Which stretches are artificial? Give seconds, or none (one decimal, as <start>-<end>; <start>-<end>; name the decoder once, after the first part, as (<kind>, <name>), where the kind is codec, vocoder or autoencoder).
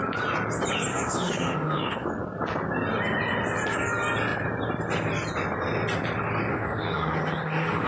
0.9-2.1 (autoencoder, DAC-VAE); 6.5-7.9